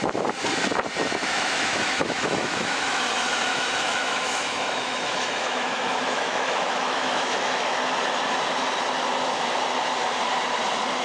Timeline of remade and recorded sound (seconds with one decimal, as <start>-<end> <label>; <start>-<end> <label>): 0.0-1.2 recorded; 1.2-3.0 remade; 3.0-3.5 recorded; 3.5-7.8 remade; 7.8-11.0 recorded

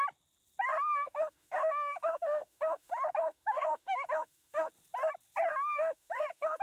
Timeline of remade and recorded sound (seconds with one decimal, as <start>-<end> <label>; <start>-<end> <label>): 0.0-0.7 recorded; 0.7-4.7 remade; 4.7-5.5 recorded; 5.5-6.6 remade

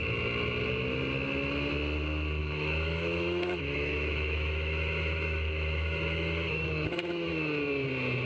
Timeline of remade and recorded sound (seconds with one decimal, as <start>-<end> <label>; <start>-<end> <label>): 0.0-2.4 recorded; 2.4-7.3 remade; 7.3-8.3 recorded

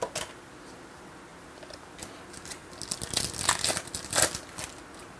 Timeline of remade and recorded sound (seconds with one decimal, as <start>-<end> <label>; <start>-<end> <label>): 0.0-5.2 recorded